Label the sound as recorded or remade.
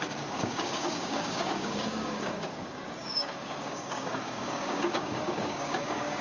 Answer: remade